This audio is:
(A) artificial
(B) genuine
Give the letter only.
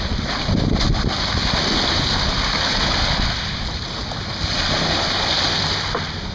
B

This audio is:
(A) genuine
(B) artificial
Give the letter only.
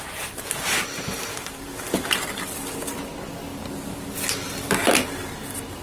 A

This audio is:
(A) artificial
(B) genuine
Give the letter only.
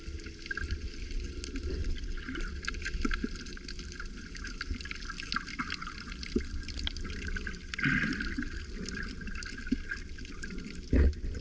B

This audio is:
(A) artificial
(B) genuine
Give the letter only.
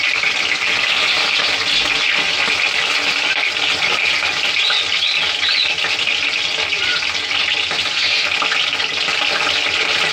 B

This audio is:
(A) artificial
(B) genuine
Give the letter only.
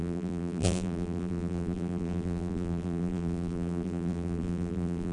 A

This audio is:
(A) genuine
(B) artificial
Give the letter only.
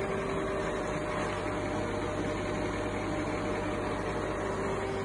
A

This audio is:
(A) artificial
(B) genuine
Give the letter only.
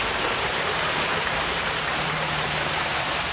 A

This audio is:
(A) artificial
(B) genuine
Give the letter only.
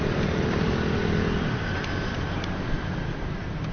B